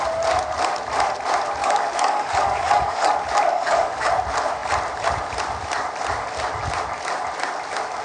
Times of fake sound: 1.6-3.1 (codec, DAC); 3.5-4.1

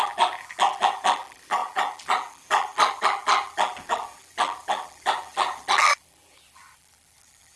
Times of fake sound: 0.0-7.6 (vocoder, BigVGAN v2)

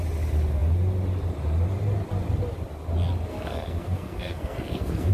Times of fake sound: 3.3-5.1 (codec, SNAC)

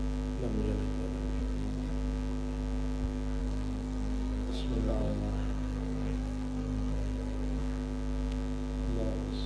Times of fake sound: 1.4-1.9 (codec, SNAC); 3.4-7.6

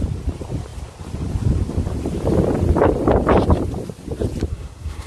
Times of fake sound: 4.5-5.1 (codec, SNAC)

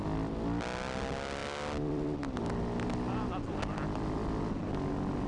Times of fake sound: none

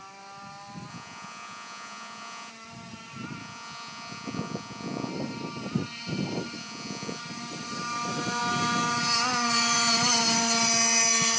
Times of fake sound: 0.9-2.5 (vocoder, Vocos); 3.4-5.1; 6.6-7.2

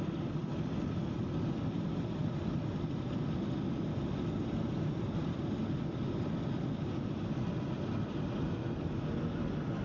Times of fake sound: none